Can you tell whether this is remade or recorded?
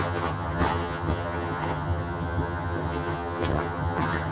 remade